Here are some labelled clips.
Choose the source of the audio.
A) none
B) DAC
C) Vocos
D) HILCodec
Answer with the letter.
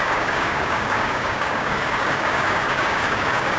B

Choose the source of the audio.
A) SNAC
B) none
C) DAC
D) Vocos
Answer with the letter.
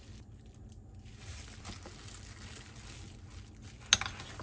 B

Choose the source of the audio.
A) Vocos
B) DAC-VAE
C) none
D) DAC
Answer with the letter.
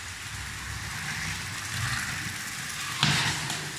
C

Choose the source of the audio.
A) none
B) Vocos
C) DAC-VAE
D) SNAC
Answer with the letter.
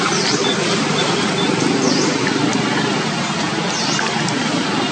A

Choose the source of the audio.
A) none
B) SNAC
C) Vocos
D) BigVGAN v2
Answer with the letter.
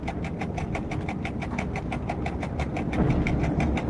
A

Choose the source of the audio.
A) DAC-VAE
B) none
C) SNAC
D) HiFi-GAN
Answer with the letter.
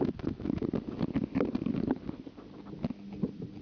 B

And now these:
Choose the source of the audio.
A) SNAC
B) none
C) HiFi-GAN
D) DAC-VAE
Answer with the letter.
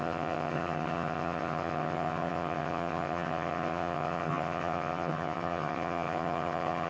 C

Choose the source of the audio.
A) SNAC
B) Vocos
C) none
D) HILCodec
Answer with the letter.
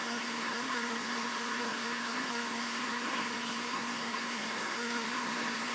A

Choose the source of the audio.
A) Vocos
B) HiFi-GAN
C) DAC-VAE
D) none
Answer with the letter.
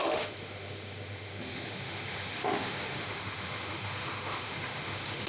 C